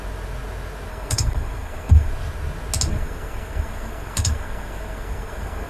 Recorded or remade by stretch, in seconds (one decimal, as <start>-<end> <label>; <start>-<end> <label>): 0.0-0.9 recorded; 0.9-2.1 remade; 2.1-2.9 recorded; 2.9-5.7 remade